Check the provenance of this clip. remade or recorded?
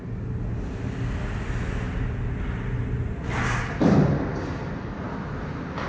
recorded